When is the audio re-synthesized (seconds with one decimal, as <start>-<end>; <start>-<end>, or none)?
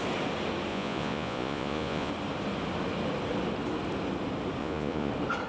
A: 0.7-2.1; 4.6-5.1